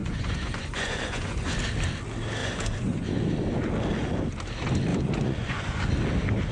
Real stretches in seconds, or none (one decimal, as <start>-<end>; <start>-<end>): 1.5-2.4; 3.3-4.9; 5.8-6.5

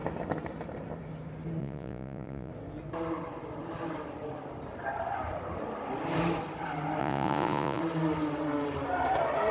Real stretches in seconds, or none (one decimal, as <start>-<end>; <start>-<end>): 0.0-1.6; 2.5-7.0; 7.8-9.5

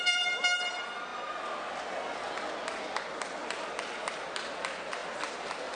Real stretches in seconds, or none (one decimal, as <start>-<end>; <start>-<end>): 0.0-5.8

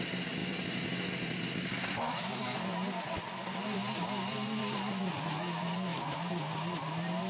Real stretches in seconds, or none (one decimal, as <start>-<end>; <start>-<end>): 0.0-7.3